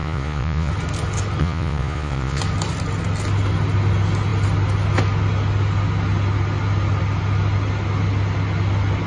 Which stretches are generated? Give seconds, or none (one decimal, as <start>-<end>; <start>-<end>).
0.0-0.7; 1.4-2.4